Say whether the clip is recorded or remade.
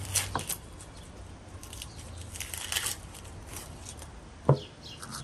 recorded